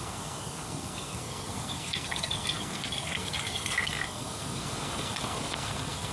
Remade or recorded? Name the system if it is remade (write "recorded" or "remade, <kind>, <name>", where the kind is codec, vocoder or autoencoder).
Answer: remade, codec, SNAC